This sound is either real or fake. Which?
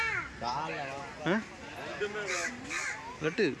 real